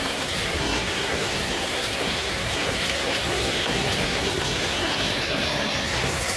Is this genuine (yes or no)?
no